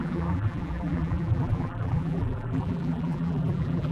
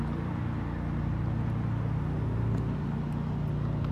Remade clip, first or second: first